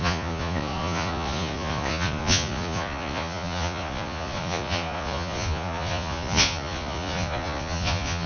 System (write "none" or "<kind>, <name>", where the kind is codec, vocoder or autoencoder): vocoder, Vocos